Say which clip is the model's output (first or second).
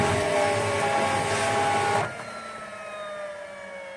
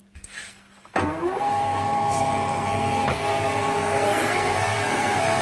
second